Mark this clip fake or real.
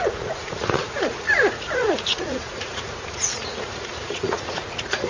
fake